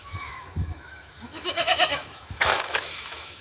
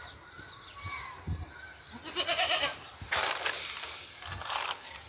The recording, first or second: second